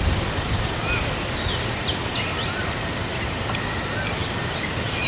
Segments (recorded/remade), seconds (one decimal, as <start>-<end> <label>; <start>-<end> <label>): 0.0-5.1 recorded